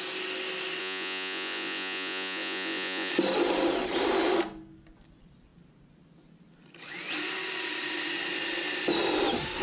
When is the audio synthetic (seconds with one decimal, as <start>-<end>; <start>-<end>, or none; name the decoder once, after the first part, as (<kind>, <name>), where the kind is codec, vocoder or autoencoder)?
0.8-3.1 (vocoder, Vocos)